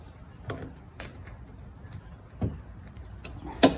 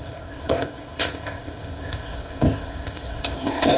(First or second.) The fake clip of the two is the second